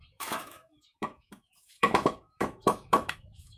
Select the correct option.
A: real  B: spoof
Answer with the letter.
B